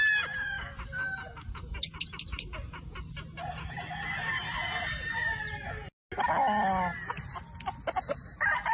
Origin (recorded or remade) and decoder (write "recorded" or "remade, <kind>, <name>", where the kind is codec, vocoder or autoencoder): recorded